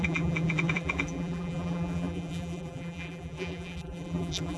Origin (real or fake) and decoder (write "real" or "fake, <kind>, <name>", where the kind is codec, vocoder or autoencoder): fake, vocoder, BigVGAN v2